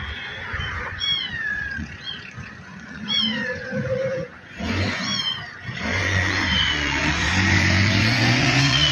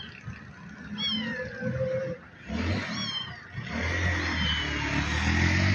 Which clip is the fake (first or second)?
first